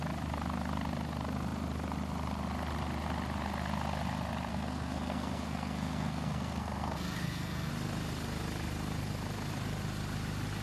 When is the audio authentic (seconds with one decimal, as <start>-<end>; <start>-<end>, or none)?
0.0-4.5; 7.7-10.6

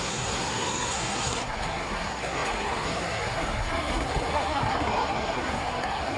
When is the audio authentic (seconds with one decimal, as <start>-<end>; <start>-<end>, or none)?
none

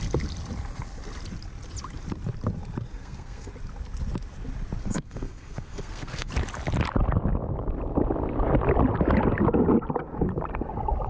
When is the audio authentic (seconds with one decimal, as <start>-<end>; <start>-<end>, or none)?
0.0-2.9; 3.5-4.8; 6.3-11.1

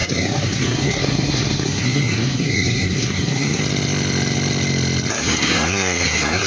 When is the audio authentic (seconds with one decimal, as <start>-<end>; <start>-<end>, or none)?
3.6-5.1

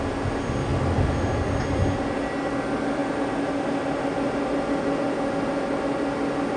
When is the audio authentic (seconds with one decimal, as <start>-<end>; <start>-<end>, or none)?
0.0-6.6

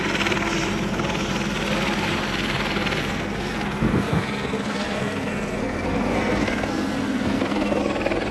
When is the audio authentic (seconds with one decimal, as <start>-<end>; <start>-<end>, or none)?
0.0-3.0; 7.8-8.3